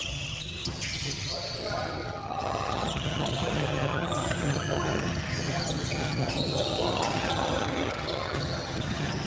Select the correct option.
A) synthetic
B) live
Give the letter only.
A